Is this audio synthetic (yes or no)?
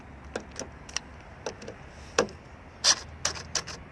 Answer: no